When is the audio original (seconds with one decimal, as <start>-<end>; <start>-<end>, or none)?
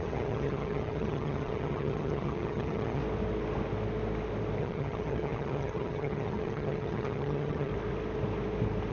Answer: 3.0-4.6; 7.7-8.9